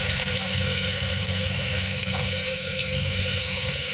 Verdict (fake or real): fake